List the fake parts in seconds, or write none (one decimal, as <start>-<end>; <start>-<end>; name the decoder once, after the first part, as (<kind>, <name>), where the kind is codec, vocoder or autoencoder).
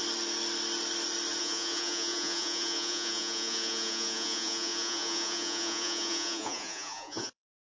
1.4-7.8 (vocoder, Vocos)